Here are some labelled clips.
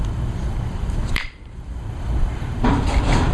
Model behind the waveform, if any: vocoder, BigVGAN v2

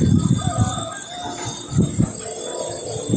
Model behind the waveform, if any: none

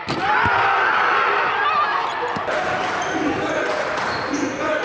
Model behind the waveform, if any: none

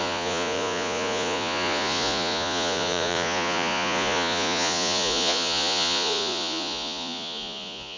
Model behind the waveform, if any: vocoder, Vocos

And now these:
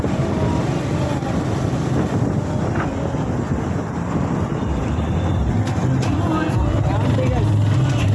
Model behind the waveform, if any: none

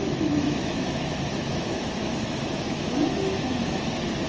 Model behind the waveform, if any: autoencoder, DAC-VAE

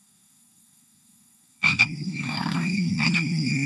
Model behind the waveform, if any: codec, SNAC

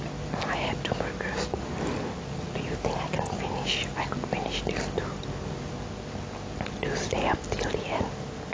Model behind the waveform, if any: none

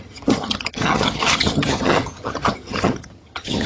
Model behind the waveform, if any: vocoder, HiFi-GAN